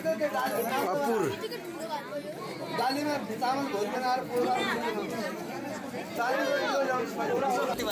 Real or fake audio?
real